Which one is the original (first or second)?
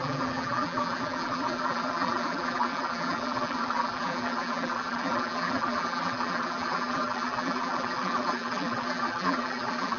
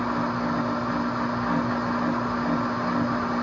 second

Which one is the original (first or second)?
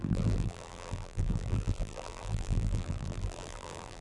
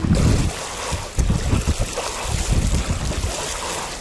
second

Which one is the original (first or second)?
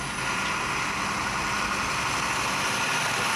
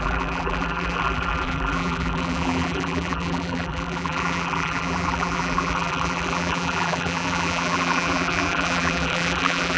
first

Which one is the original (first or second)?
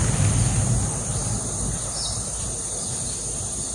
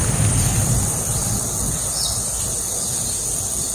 first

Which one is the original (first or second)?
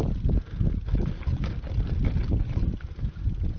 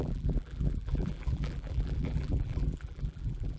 first